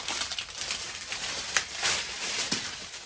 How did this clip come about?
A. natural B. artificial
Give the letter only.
A